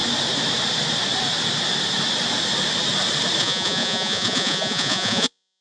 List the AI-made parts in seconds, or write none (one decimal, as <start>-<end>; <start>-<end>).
3.4-5.6